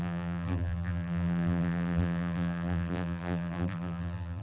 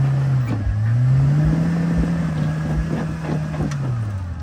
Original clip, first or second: second